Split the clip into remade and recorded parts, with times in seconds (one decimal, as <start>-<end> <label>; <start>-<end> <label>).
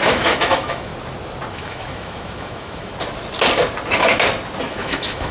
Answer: 0.0-0.9 remade; 0.9-1.5 recorded; 1.5-2.9 remade; 2.9-4.7 recorded; 4.7-5.3 remade